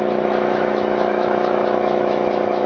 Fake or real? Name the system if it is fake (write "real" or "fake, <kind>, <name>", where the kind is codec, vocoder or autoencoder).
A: fake, autoencoder, DAC-VAE